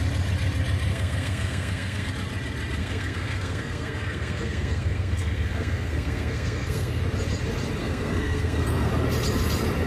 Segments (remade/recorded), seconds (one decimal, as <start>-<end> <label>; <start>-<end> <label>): 0.0-0.9 recorded; 0.9-2.1 remade; 2.1-2.8 recorded; 2.8-7.0 remade; 7.0-7.8 recorded; 7.8-8.9 remade; 8.9-9.9 recorded